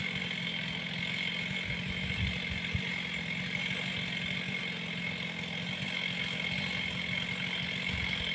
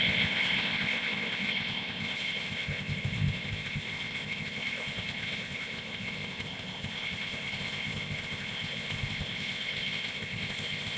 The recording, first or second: first